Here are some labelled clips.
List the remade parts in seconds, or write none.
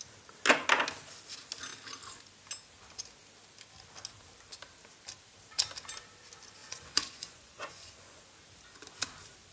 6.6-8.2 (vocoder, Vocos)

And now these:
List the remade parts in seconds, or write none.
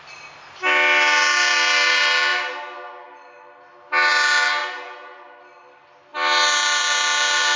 4.6-5.2 (vocoder, Vocos)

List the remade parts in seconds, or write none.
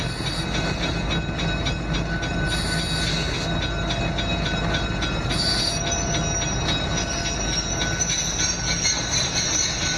none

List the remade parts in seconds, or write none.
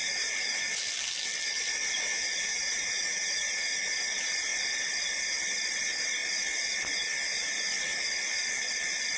0.0-0.6 (vocoder, Vocos); 2.5-3.8